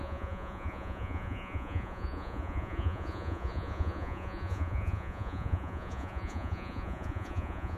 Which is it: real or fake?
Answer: fake